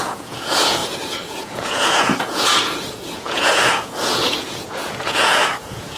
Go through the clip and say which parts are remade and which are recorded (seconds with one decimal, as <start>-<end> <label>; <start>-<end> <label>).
0.0-6.0 remade